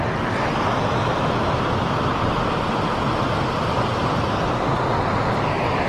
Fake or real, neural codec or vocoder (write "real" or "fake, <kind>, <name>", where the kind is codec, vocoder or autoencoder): real